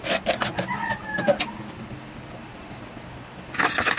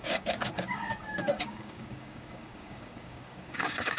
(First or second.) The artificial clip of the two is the second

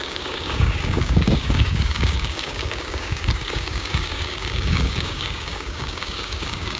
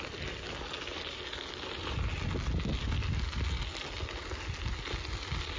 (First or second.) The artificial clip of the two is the first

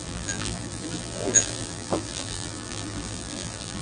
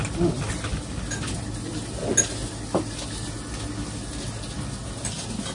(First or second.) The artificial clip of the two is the first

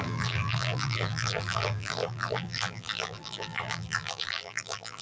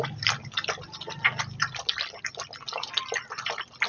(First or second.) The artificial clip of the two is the first